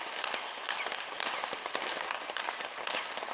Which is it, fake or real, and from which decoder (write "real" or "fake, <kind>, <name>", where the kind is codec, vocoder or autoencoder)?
real